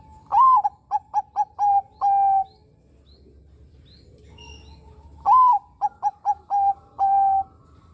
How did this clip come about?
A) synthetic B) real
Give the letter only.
B